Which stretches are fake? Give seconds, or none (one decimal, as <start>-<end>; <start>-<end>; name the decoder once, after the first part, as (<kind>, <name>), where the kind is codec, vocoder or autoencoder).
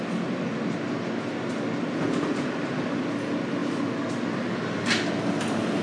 none